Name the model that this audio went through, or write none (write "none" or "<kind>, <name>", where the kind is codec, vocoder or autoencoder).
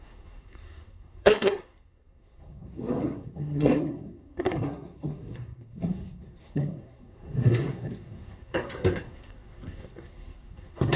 codec, SNAC